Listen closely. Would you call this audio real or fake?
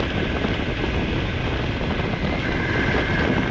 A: real